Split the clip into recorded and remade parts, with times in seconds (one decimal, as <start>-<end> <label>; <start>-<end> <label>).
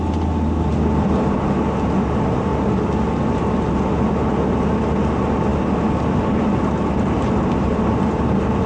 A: 0.0-8.7 recorded